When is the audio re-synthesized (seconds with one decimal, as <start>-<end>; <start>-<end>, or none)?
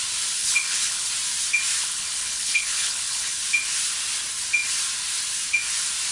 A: 0.4-1.1; 1.8-3.3